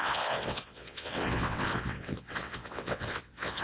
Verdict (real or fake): fake